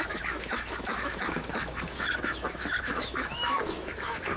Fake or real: fake